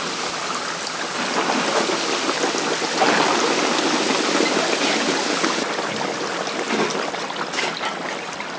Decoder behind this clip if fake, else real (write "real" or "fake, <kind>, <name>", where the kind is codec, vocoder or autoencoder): real